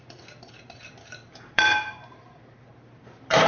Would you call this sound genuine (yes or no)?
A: no